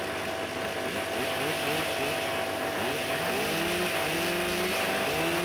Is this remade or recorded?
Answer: recorded